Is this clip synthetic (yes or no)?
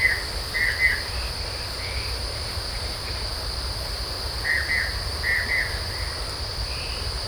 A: no